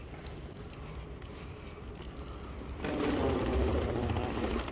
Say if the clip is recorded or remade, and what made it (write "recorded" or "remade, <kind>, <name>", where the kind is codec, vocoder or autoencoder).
recorded